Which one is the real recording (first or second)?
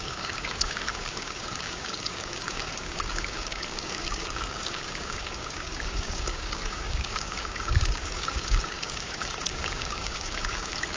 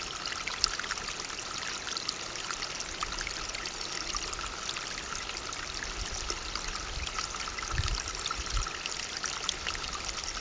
second